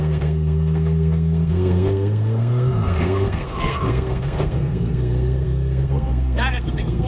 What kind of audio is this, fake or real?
fake